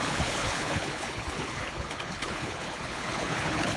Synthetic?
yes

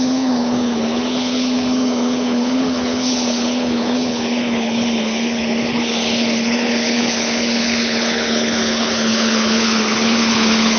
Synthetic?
yes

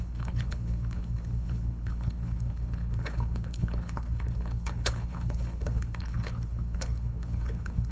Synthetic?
yes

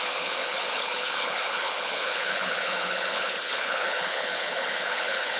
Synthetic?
yes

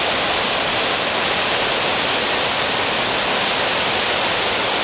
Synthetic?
no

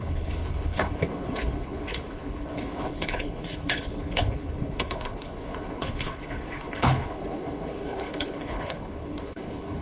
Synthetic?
yes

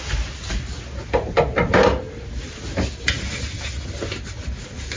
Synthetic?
no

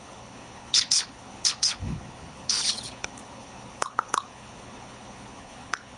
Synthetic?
yes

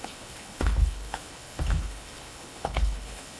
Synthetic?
yes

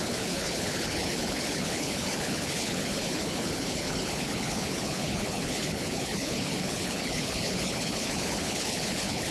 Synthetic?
yes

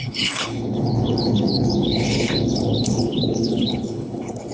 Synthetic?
yes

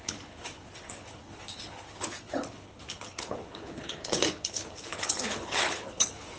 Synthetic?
yes